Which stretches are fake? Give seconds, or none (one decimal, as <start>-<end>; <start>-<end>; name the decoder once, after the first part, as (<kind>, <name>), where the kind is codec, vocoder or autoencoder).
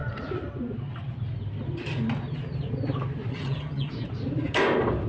3.3-3.9 (vocoder, HiFi-GAN)